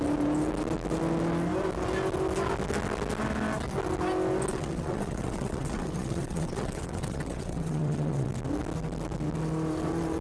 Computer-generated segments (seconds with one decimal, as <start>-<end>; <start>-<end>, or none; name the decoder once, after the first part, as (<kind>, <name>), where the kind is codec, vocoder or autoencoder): 4.5-8.3 (vocoder, WaveNeXt)